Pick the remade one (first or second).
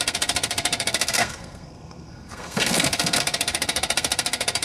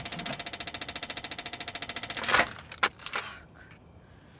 first